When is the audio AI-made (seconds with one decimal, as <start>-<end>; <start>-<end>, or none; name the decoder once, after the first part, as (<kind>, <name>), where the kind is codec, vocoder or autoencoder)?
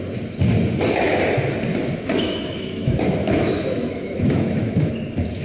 1.7-4.9 (autoencoder, DAC-VAE)